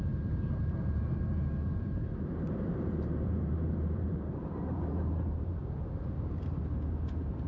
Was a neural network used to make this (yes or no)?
yes